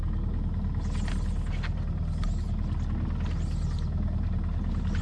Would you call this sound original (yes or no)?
yes